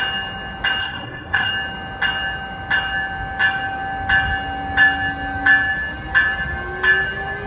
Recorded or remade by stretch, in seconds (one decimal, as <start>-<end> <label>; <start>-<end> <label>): 0.0-0.8 recorded; 0.8-1.5 remade; 1.5-7.5 recorded